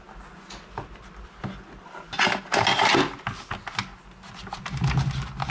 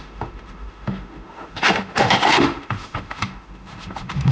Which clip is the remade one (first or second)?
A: second